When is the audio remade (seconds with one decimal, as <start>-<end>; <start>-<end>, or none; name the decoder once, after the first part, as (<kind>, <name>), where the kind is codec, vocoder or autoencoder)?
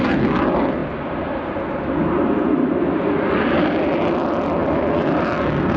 none